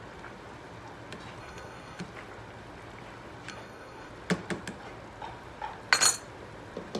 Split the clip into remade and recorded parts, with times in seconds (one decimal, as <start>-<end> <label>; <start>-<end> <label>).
0.0-1.4 recorded; 1.4-2.0 remade; 2.0-3.5 recorded; 3.5-4.1 remade; 4.1-7.0 recorded